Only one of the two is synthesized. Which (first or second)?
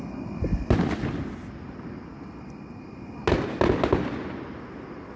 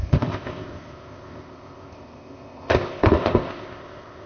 second